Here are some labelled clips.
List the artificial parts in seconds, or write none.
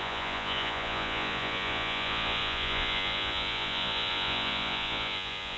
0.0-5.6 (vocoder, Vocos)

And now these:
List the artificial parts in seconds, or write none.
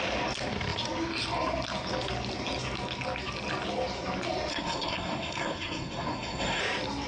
4.5-6.6 (codec, SNAC)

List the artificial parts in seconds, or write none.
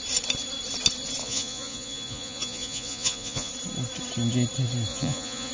1.2-3.5 (vocoder, Vocos); 4.9-5.5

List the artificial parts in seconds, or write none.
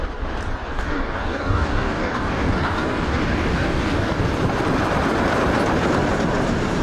0.5-4.2 (codec, DAC)